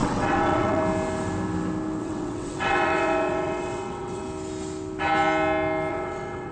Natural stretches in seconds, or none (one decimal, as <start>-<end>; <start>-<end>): 0.8-2.0; 4.2-5.9